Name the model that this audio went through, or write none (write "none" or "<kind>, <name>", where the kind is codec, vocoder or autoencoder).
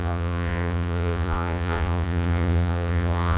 vocoder, Vocos